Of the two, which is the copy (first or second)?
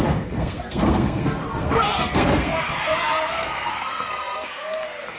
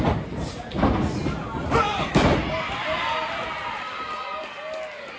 first